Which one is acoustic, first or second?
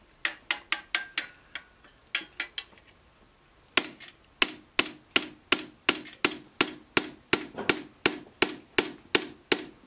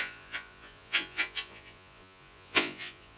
first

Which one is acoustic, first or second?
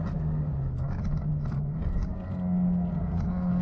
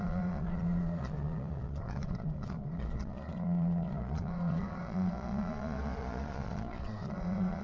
first